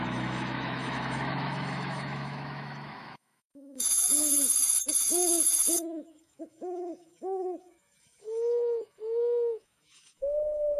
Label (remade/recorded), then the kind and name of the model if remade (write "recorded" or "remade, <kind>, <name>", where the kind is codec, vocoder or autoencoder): remade, autoencoder, DAC-VAE